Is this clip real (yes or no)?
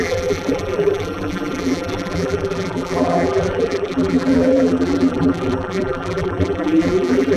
no